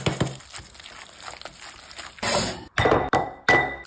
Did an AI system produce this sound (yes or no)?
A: no